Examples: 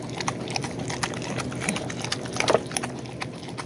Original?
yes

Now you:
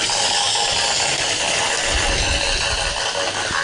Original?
yes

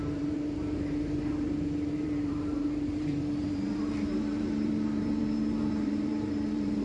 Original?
no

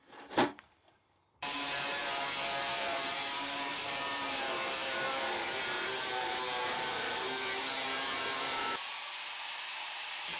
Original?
no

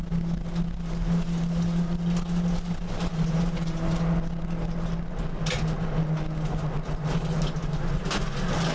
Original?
yes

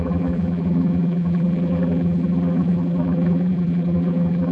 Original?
no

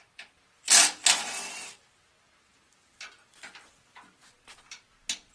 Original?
yes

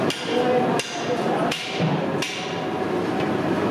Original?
yes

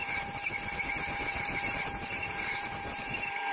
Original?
no